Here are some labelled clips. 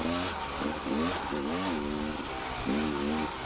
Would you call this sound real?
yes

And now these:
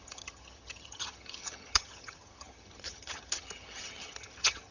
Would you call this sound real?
no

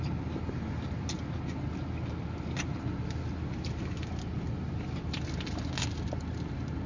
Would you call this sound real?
yes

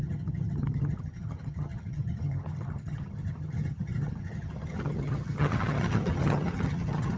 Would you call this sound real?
no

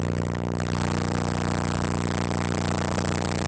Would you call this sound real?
yes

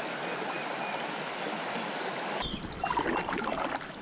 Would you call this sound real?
yes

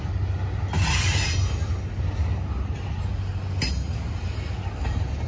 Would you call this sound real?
yes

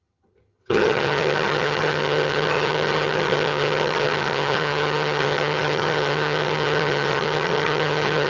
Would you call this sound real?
no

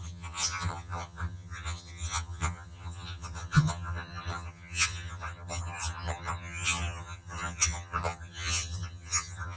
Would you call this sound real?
no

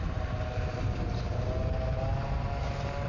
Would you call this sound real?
yes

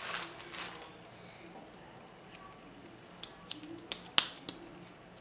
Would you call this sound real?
yes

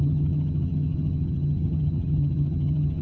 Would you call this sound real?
no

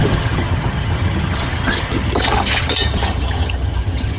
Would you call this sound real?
no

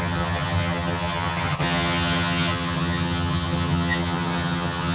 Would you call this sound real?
no